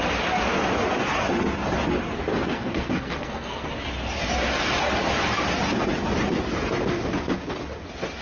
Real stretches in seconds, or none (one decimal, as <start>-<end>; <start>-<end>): 0.0-2.3; 3.7-8.2